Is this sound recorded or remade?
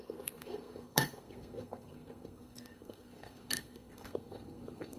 remade